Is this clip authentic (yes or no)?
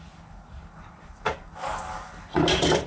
no